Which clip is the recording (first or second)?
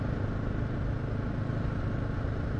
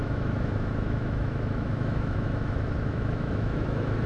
first